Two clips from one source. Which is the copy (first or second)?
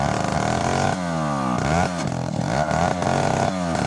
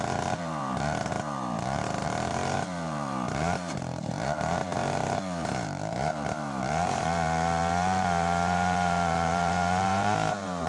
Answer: second